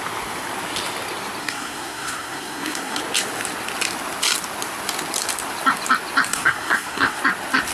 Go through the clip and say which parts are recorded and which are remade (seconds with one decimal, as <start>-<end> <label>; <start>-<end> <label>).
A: 0.0-1.4 recorded; 1.4-3.0 remade; 3.0-6.3 recorded; 6.3-7.2 remade; 7.2-7.7 recorded